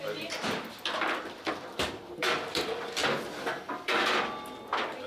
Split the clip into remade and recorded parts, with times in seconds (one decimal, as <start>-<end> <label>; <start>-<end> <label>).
0.0-5.1 remade